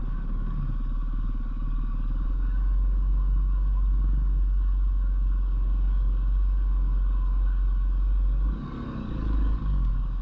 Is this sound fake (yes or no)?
yes